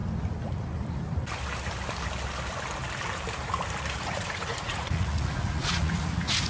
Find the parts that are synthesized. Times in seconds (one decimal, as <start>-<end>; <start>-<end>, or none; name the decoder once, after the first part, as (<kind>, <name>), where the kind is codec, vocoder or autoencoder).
3.9-6.5 (vocoder, Vocos)